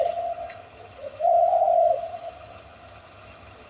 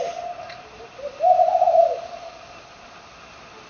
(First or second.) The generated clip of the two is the first